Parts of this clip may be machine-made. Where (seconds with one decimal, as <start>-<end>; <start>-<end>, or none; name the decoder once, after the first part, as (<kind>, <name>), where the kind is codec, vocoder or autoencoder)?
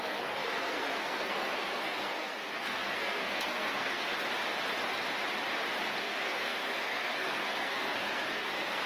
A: 0.0-4.1 (codec, SNAC); 6.0-8.9